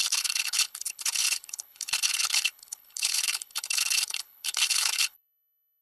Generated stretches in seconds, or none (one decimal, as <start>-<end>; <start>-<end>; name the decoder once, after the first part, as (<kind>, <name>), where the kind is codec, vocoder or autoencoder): 0.0-5.8 (codec, HILCodec)